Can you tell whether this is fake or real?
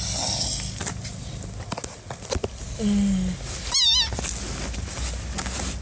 real